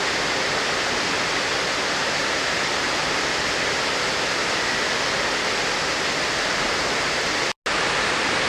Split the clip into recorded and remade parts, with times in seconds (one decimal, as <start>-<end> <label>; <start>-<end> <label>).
0.0-2.0 recorded; 2.0-4.7 remade; 4.7-8.5 recorded